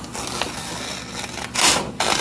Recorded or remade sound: recorded